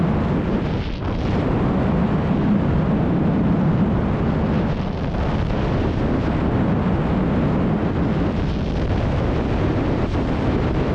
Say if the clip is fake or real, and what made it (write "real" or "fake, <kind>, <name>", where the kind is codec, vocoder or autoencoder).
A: real